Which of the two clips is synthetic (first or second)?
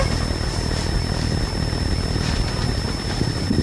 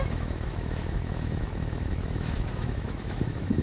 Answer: second